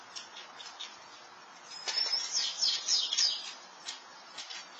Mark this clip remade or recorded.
recorded